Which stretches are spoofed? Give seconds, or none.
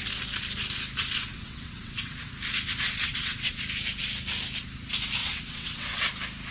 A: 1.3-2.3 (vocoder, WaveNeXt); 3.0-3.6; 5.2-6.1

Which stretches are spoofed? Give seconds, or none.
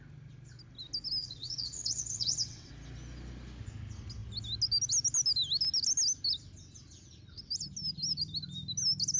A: 1.2-2.7 (vocoder, WaveNeXt)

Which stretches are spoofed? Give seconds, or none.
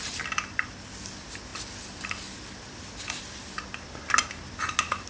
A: none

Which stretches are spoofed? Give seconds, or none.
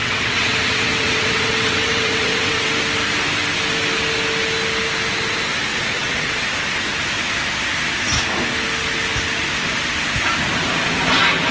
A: 0.0-2.7 (vocoder, WaveNeXt); 5.7-6.5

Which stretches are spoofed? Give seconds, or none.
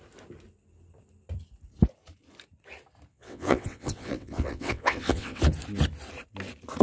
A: 3.1-5.4 (vocoder, WaveNeXt)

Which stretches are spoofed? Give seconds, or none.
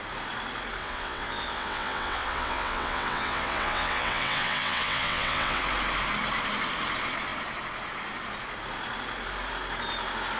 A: 0.8-5.6 (vocoder, WaveNeXt)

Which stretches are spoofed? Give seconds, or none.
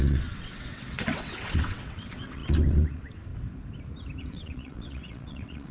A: 0.0-3.3 (vocoder, WaveNeXt); 4.2-5.7